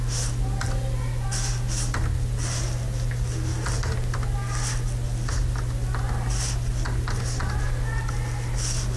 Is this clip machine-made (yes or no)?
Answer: no